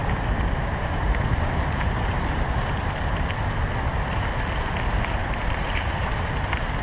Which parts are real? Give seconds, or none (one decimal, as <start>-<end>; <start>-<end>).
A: 2.8-5.2